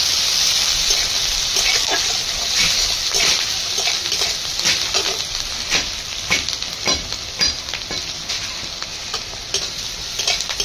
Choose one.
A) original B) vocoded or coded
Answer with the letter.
A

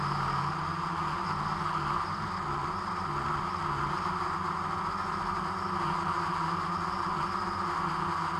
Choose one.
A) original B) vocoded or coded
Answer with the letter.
A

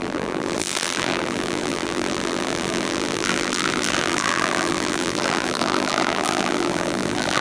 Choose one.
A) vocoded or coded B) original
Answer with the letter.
A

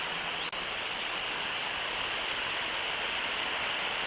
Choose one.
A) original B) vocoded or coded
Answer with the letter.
A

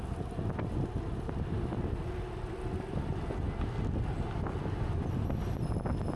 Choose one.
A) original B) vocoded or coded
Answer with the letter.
A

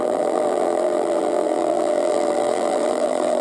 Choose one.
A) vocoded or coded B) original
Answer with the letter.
A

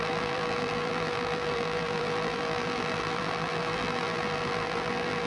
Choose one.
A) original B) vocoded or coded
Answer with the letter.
B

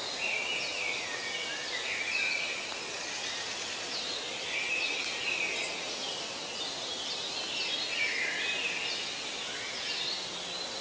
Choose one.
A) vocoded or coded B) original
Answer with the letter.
B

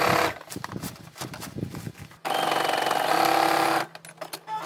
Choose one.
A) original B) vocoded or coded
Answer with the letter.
A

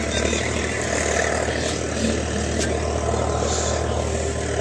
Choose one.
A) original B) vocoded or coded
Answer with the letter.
A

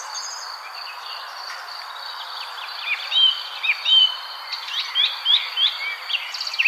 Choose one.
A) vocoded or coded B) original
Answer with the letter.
B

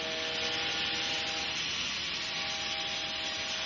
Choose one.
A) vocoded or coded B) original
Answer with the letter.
B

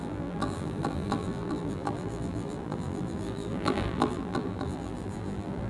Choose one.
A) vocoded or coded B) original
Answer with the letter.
A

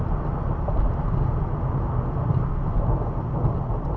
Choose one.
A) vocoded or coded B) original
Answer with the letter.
B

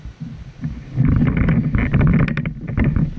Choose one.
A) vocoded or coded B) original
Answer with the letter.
B